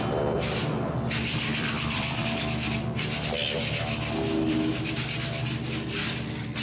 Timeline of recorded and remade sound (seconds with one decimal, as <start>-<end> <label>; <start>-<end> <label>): 0.0-0.6 recorded; 0.6-2.4 remade; 2.4-6.6 recorded